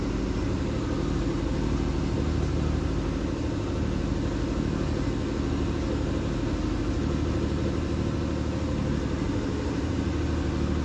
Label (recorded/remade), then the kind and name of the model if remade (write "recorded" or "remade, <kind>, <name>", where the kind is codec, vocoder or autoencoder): recorded